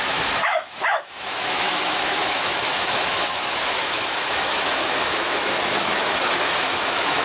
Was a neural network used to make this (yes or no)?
yes